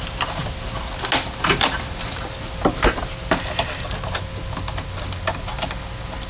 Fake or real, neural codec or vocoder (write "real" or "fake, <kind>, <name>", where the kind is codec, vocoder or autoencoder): real